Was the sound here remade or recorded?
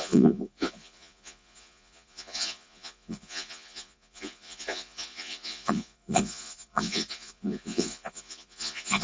remade